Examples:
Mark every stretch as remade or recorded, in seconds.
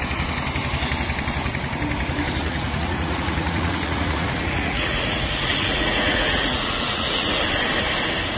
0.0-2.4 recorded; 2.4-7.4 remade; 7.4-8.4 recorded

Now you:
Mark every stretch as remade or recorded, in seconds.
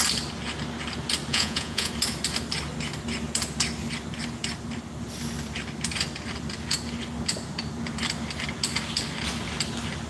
0.0-1.3 recorded; 1.3-1.9 remade; 1.9-10.1 recorded